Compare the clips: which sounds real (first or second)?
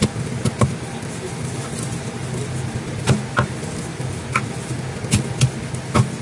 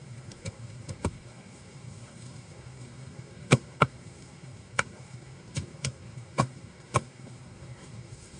first